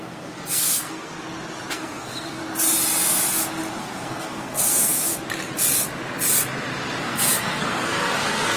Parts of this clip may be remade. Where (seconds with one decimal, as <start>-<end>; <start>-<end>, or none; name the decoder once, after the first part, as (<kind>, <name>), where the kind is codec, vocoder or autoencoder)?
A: 0.0-1.1 (codec, SNAC); 1.7-2.4; 3.8-5.1; 7.0-8.6